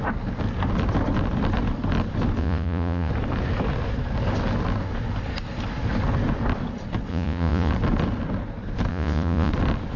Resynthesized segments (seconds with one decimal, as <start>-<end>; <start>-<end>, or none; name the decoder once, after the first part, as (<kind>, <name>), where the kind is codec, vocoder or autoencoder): 2.4-3.1 (vocoder, Vocos); 7.1-7.7; 8.9-9.5

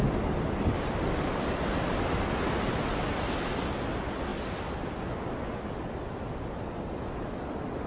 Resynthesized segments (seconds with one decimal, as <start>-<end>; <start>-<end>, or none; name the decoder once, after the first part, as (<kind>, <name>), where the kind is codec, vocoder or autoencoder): none